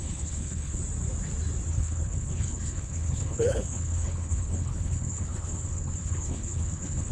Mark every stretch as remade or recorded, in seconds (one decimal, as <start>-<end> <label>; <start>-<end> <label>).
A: 0.0-0.8 remade; 0.8-1.7 recorded; 1.7-7.1 remade

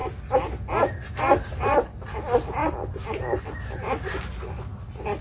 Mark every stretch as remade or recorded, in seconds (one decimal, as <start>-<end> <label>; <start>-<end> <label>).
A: 0.0-5.2 recorded

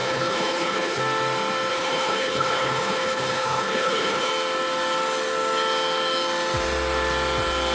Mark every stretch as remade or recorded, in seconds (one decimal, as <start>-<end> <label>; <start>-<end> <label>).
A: 0.0-1.0 remade; 1.0-1.7 recorded; 1.7-4.3 remade; 4.3-7.7 recorded